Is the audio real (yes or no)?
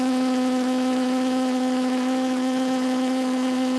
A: no